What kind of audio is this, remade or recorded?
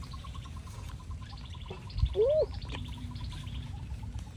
remade